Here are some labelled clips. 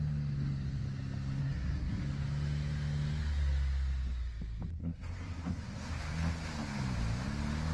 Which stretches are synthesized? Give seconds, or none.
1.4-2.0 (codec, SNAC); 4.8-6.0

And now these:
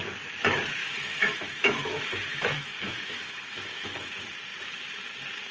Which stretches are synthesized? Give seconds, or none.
0.8-4.1 (autoencoder, DAC-VAE)

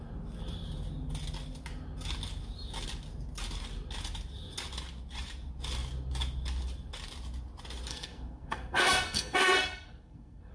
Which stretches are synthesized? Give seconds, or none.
7.9-10.5 (codec, SNAC)

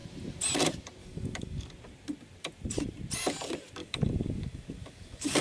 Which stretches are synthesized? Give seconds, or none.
1.0-1.7 (codec, DAC); 3.8-5.4

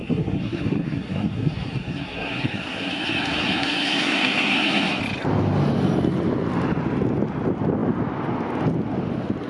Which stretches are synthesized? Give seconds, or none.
0.0-5.0 (codec, SNAC)

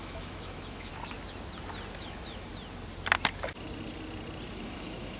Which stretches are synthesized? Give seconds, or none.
0.0-0.9 (autoencoder, DAC-VAE); 2.0-2.5; 4.5-5.2